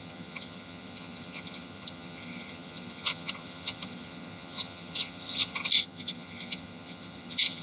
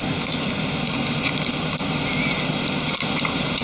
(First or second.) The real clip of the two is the second